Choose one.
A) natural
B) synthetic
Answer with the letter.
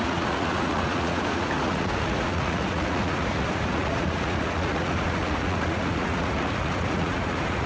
B